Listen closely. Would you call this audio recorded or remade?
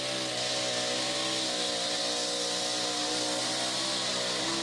recorded